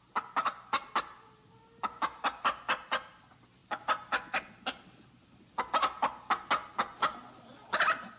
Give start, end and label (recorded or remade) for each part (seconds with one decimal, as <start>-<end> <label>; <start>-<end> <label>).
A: 0.0-8.2 recorded

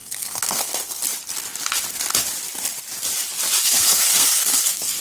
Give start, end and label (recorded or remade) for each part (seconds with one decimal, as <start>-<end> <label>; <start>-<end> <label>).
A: 0.0-1.0 remade; 1.0-3.6 recorded; 3.6-5.0 remade